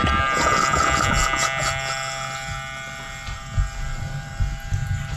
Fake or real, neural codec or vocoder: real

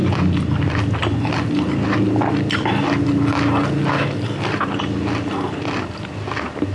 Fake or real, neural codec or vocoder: real